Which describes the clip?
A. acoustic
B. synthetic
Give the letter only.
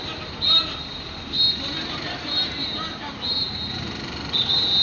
A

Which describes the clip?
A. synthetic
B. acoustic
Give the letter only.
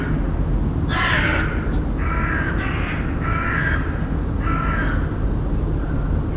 B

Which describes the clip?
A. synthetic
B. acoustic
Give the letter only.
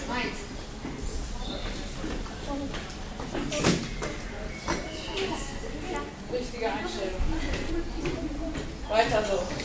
B